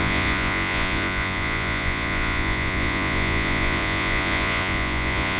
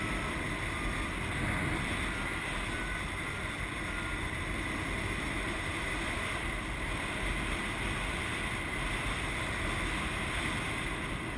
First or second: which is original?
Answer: second